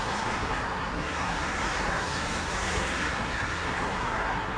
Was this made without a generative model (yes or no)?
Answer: no